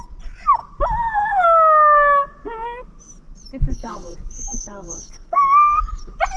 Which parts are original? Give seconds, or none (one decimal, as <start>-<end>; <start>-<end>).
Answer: 0.0-3.7; 5.8-6.4